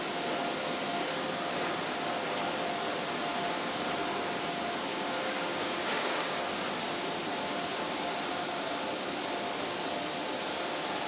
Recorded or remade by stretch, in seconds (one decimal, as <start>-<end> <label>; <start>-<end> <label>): 0.0-4.9 recorded; 4.9-6.4 remade; 6.4-11.1 recorded